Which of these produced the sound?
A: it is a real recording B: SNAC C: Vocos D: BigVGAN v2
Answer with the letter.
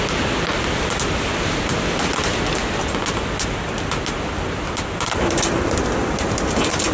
A